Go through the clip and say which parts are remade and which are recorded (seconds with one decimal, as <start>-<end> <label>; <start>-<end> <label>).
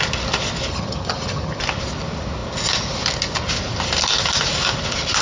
0.0-0.7 recorded; 0.7-1.6 remade; 1.6-5.2 recorded